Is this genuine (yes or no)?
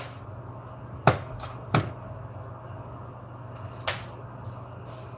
yes